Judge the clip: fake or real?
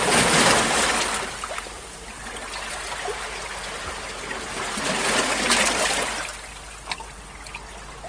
real